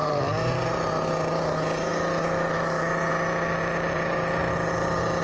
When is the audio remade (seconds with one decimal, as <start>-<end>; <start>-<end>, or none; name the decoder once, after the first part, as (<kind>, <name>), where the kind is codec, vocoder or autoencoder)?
none

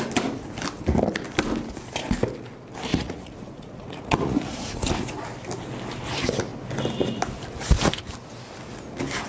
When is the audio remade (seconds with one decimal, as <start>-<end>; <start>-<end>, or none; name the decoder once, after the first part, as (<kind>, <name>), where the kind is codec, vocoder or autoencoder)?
2.9-4.9 (vocoder, Vocos)

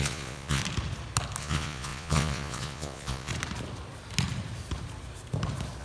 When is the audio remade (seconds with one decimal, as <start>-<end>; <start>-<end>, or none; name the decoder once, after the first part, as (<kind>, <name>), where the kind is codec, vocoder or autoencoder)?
0.0-0.6 (vocoder, Vocos); 1.4-3.3

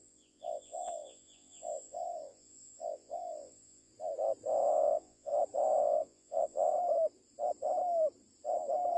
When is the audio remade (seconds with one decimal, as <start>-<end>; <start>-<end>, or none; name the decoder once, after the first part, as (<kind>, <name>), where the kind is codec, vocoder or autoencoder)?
0.0-3.9 (vocoder, Vocos); 4.7-5.3; 5.8-6.7

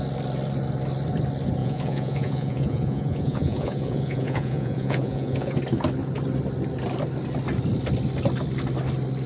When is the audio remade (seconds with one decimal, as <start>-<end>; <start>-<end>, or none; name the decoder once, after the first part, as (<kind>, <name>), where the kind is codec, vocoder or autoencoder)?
1.6-5.6 (vocoder, Vocos)

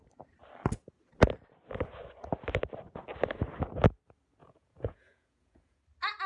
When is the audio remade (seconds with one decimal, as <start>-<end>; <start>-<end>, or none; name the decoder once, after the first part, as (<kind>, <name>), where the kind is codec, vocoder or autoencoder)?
4.4-5.8 (vocoder, Vocos)

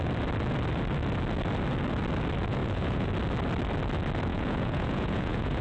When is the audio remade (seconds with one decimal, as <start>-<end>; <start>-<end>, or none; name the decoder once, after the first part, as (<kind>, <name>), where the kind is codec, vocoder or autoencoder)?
2.6-3.1 (vocoder, Vocos); 4.3-5.6